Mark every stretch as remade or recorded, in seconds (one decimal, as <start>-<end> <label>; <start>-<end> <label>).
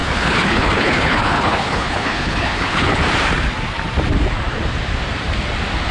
0.0-3.0 remade; 3.0-5.9 recorded